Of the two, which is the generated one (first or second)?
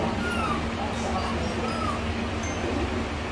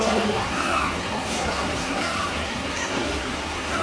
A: second